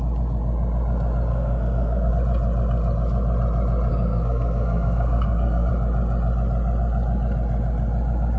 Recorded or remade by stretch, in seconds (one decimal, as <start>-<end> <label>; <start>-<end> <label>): 0.0-1.3 recorded; 1.3-2.1 remade; 2.1-3.9 recorded; 3.9-5.7 remade; 5.7-8.4 recorded